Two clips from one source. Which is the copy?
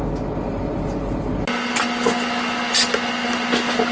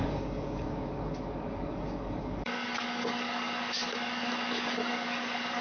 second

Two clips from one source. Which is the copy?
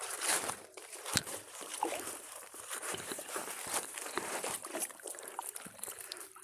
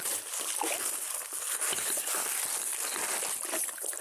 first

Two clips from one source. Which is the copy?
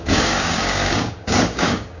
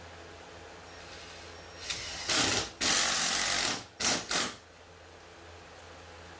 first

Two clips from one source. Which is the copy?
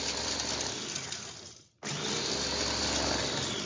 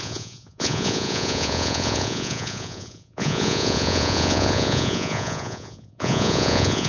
second